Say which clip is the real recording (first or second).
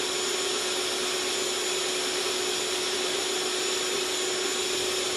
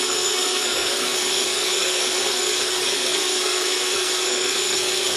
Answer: first